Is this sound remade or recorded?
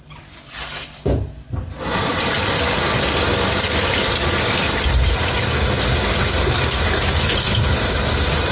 recorded